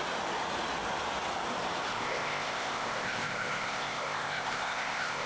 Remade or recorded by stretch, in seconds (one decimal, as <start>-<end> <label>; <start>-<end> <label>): 0.0-1.9 recorded; 1.9-5.3 remade